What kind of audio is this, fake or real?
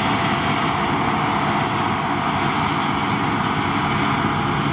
real